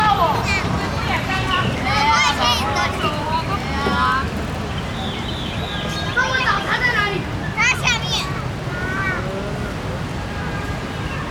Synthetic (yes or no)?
no